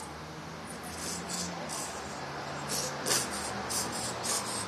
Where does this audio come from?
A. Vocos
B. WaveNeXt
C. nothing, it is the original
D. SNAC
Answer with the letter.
C